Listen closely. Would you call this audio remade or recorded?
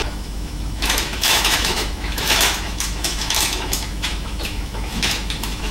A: remade